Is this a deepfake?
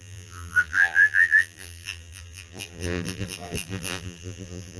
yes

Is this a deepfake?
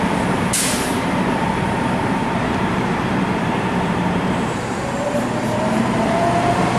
yes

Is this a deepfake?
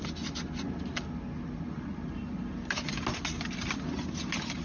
no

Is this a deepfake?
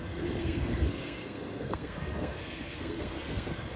yes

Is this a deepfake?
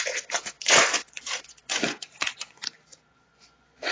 yes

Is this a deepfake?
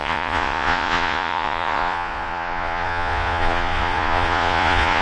yes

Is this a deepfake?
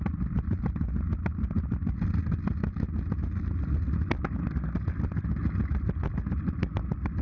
no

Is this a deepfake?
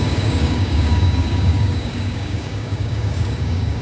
yes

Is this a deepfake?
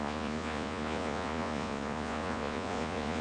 yes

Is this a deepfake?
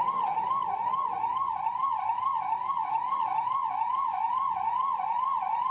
no